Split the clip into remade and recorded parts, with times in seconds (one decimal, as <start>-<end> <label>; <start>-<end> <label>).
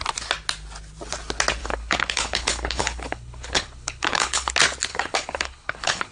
0.0-1.6 recorded; 1.6-4.5 remade; 4.5-4.9 recorded; 4.9-6.1 remade